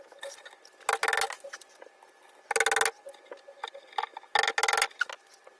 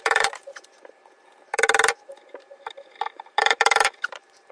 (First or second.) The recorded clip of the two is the first